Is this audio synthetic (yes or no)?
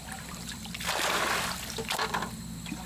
yes